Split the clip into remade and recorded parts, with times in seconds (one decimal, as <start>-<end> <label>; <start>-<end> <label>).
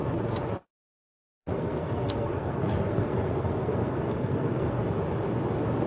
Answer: 0.0-1.3 recorded; 1.3-4.8 remade; 4.8-5.9 recorded